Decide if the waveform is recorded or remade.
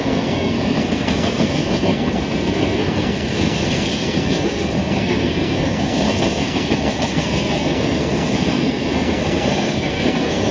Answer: remade